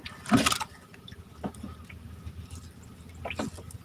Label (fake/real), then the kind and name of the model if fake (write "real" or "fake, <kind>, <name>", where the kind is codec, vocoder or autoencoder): real